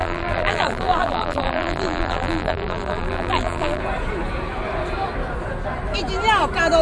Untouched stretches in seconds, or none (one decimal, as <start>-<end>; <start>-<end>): 3.8-6.8